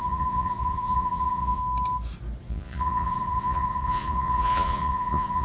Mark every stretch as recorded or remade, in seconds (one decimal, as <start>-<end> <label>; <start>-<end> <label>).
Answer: 0.0-1.6 remade; 1.6-2.5 recorded; 2.5-5.4 remade